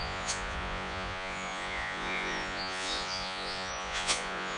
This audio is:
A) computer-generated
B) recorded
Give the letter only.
A